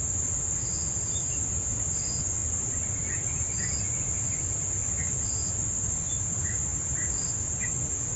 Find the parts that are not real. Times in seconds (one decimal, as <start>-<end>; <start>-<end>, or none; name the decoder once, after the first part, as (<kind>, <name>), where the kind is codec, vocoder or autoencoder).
none